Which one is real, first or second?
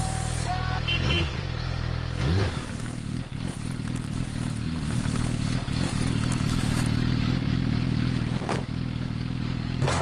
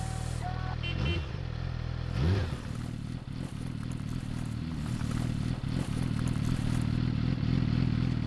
second